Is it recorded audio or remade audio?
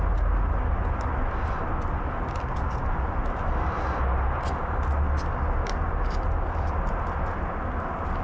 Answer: recorded